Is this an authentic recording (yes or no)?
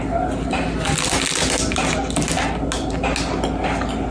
yes